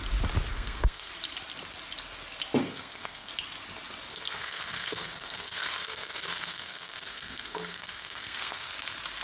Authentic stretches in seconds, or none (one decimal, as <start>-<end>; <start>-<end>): 0.0-0.5; 1.1-2.6; 3.3-4.1; 8.7-9.2